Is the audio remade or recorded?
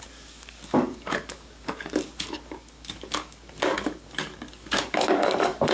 remade